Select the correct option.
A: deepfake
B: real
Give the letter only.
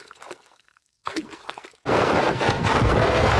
A